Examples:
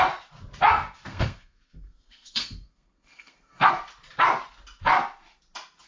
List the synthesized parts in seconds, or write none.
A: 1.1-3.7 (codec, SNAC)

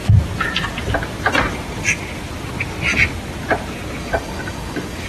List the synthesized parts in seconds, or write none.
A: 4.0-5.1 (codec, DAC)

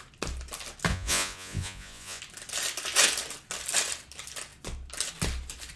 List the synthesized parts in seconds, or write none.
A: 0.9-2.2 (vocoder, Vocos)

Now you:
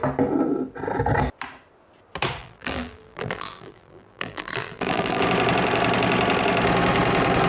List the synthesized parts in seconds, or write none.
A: 2.4-5.2 (vocoder, BigVGAN v2)

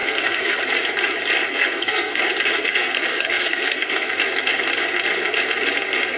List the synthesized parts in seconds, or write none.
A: 0.0-0.6 (codec, SNAC); 1.5-2.2; 2.6-4.1

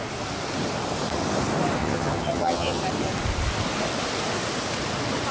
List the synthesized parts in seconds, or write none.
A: 1.8-2.8 (vocoder, HiFi-GAN)

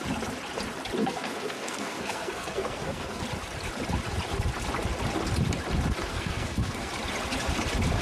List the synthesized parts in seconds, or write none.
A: 1.0-3.2 (codec, SNAC); 6.1-6.9

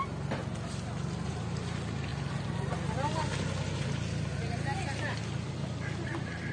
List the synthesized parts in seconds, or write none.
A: none